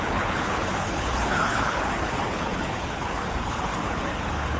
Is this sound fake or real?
fake